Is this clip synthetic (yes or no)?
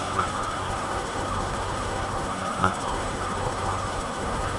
yes